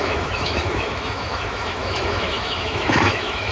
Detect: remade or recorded remade